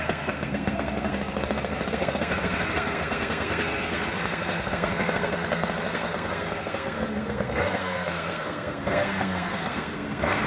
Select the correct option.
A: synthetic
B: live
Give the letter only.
A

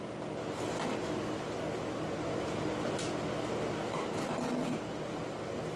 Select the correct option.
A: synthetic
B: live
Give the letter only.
B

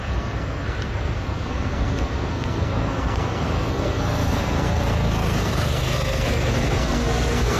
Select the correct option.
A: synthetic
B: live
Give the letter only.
A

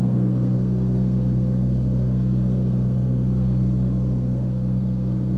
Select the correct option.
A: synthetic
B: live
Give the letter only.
A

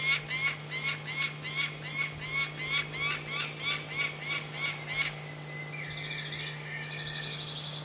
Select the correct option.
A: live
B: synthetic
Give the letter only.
A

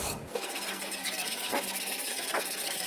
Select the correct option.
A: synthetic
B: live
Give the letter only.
A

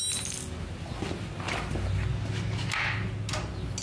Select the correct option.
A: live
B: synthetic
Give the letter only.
A